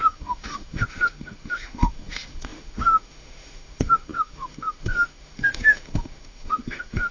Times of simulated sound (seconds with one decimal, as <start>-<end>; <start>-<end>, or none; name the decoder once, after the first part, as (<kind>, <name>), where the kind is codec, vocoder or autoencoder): 0.0-7.1 (autoencoder, DAC-VAE)